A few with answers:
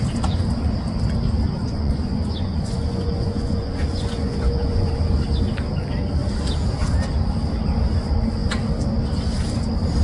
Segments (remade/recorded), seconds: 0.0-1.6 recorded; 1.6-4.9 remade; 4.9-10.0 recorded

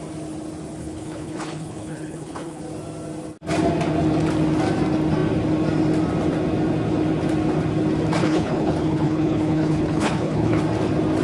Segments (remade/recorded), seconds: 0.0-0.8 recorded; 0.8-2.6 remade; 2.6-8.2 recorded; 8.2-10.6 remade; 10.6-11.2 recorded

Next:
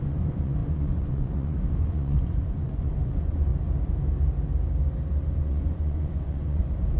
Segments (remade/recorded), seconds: 0.0-3.5 remade; 3.5-5.4 recorded; 5.4-7.0 remade

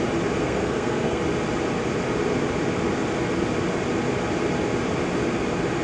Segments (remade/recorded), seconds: 0.0-0.4 recorded; 0.4-1.2 remade; 1.2-5.8 recorded

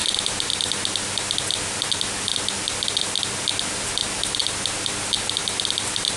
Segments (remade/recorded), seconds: 0.0-6.2 recorded

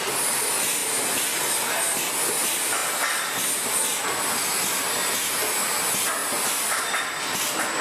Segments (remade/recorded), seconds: 0.0-7.8 recorded

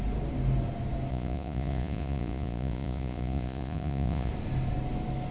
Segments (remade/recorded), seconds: 0.0-1.1 recorded; 1.1-4.3 remade; 4.3-5.3 recorded